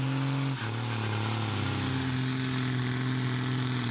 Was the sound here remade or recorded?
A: recorded